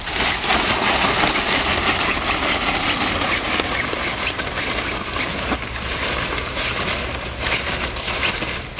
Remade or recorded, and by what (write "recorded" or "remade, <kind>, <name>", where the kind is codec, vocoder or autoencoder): recorded